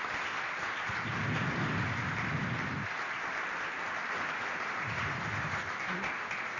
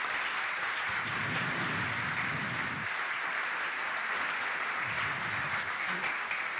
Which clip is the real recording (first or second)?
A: first